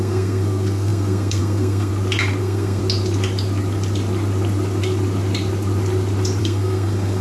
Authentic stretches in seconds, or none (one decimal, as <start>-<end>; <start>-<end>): 1.9-2.4; 2.8-6.4